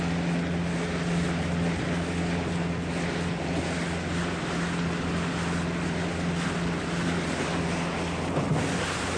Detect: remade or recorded recorded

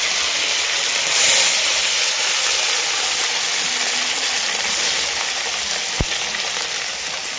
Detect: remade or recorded recorded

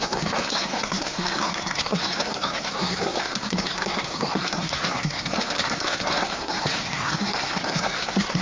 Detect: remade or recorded remade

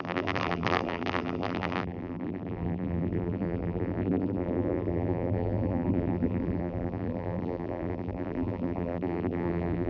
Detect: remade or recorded remade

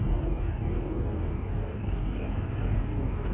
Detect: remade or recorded remade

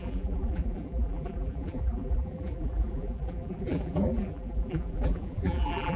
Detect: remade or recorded remade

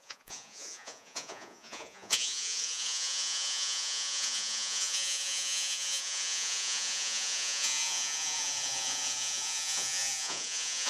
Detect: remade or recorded remade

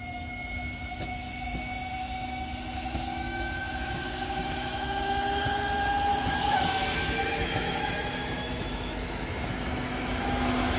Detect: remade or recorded remade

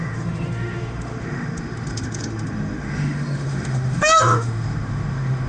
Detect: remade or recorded remade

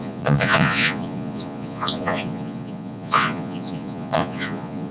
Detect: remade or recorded remade